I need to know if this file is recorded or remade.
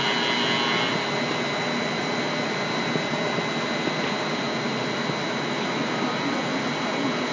recorded